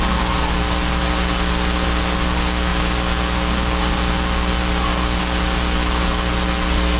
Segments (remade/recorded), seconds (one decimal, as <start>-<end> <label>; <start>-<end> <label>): 0.0-7.0 recorded